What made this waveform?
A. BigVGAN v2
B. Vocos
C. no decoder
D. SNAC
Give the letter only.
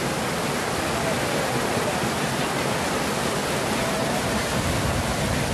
C